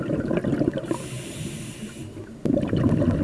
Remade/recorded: recorded